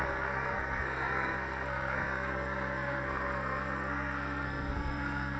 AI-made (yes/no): yes